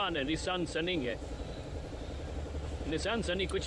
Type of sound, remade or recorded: recorded